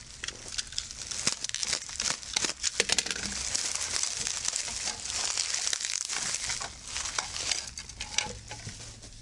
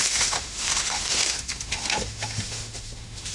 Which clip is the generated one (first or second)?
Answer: second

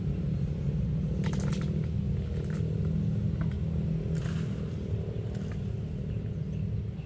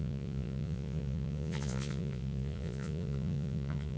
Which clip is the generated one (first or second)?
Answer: second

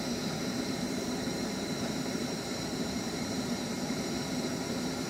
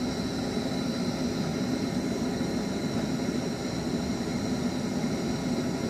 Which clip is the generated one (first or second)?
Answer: first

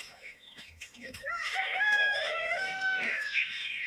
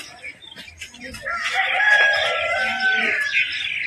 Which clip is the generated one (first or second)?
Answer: first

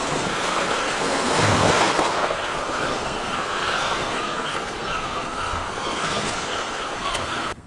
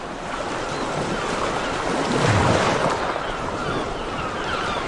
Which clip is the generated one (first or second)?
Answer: first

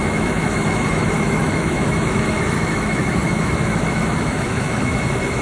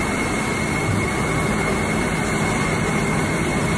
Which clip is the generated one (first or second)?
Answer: first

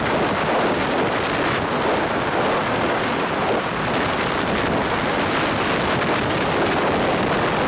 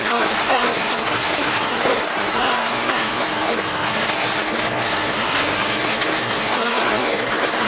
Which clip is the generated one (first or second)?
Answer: second